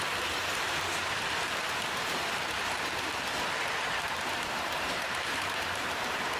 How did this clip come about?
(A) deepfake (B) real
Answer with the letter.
A